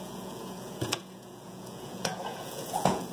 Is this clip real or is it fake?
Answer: fake